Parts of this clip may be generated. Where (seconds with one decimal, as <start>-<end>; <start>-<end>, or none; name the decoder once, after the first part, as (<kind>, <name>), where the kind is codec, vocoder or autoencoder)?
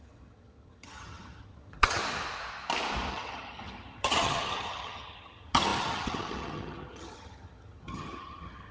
0.0-2.0 (vocoder, HiFi-GAN); 3.1-8.7